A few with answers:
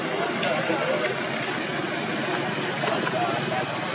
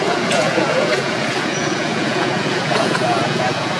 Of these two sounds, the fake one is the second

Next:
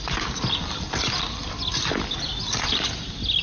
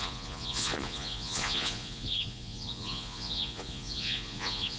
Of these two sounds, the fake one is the second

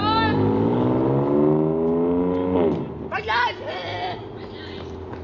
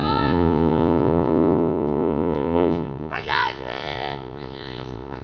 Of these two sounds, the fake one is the second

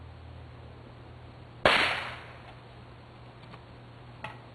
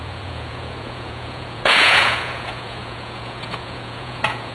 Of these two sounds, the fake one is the second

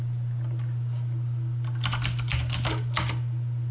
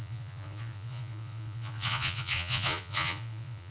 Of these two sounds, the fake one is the second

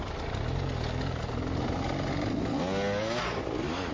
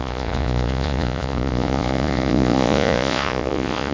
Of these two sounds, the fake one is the second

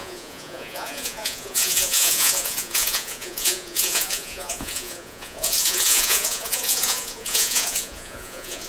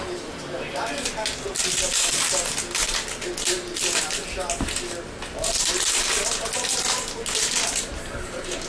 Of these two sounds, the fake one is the first